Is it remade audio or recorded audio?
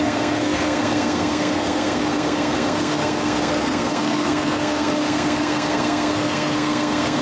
remade